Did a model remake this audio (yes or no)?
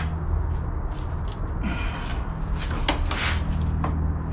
no